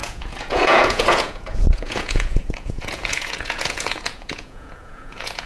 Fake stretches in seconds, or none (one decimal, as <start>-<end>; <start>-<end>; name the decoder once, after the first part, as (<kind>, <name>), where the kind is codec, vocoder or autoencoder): 0.0-5.5 (vocoder, Vocos)